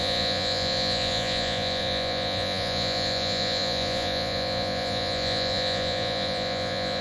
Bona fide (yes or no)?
no